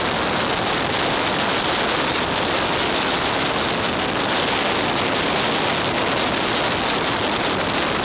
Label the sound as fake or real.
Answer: real